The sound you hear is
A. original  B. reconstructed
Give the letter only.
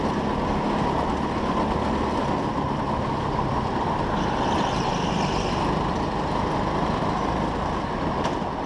A